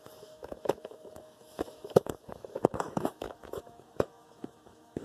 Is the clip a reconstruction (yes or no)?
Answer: yes